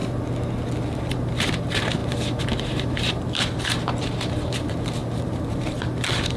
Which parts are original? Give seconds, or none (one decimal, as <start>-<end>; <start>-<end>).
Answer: 0.0-1.0